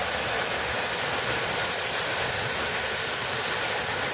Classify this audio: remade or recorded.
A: recorded